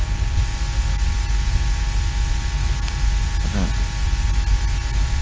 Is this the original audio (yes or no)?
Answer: yes